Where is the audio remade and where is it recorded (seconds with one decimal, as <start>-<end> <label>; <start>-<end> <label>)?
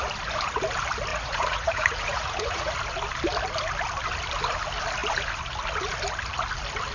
0.0-1.1 recorded; 1.1-2.7 remade; 2.7-6.9 recorded